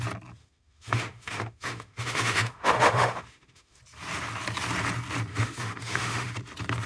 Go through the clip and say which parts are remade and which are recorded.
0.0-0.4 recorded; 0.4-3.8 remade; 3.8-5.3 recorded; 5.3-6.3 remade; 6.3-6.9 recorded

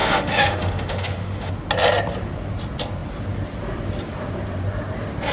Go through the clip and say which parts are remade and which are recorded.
0.0-1.5 remade; 1.5-5.3 recorded

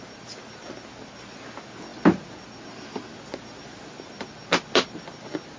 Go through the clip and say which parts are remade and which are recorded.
0.0-5.6 recorded

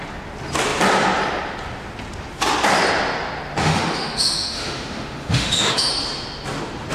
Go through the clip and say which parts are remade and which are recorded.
0.0-3.6 recorded; 3.6-5.9 remade; 5.9-6.9 recorded

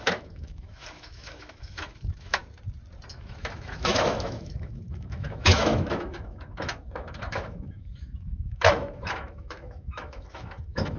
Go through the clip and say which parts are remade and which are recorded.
0.0-2.4 remade; 2.4-3.1 recorded; 3.1-11.0 remade

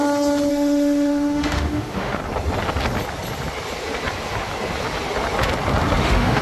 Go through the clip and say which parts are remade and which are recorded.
0.0-0.5 recorded; 0.5-2.2 remade; 2.2-6.0 recorded; 6.0-6.4 remade